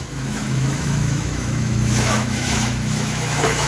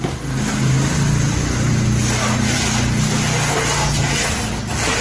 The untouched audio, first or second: second